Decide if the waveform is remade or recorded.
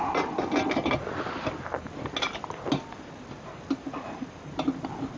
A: recorded